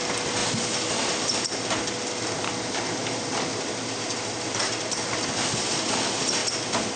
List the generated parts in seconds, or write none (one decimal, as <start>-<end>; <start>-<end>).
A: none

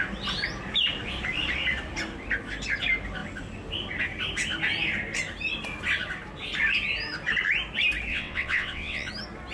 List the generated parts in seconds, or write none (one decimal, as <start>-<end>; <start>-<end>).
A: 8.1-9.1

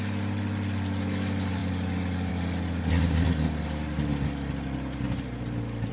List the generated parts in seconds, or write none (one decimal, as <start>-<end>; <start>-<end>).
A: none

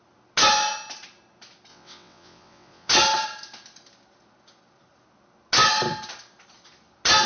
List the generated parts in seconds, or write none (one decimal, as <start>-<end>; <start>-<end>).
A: 1.7-2.9